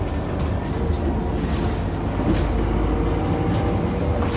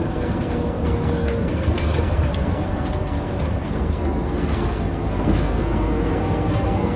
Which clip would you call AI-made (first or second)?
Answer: second